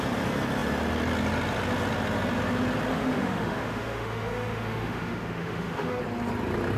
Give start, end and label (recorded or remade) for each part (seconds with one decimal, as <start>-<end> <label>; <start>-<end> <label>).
0.0-2.9 recorded; 2.9-6.0 remade; 6.0-6.8 recorded